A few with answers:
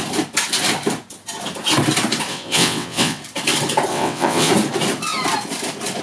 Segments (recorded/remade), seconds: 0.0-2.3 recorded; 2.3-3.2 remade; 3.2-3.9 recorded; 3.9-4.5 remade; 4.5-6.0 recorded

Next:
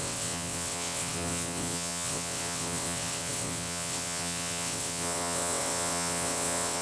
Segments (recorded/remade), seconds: 0.0-6.8 remade

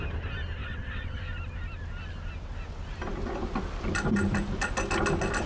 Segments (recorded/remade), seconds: 0.0-0.6 recorded; 0.6-1.2 remade; 1.2-5.5 recorded